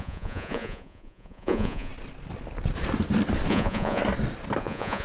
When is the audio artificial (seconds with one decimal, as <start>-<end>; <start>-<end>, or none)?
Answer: 0.0-1.9; 3.5-4.0; 4.6-5.0